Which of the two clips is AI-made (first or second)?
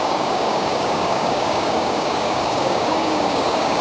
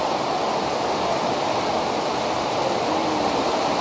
first